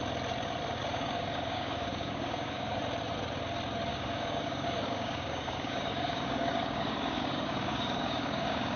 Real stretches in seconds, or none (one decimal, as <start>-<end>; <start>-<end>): 0.0-0.9; 2.8-3.9